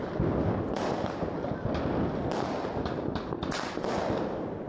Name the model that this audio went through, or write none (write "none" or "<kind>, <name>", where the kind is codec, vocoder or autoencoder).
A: none